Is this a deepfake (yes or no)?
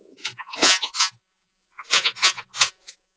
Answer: yes